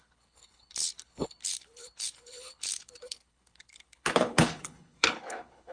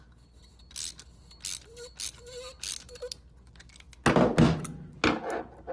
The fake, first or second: first